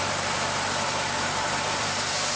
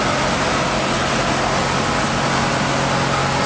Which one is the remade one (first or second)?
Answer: first